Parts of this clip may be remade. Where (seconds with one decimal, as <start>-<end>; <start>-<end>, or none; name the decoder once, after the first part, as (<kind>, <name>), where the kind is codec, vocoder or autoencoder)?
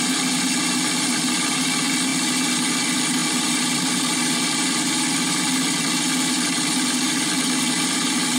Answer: none